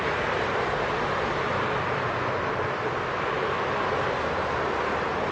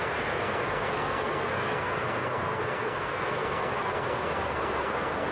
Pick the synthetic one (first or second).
second